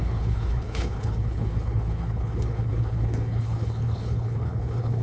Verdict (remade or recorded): remade